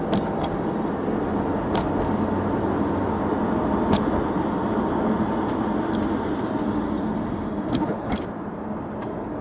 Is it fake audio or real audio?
real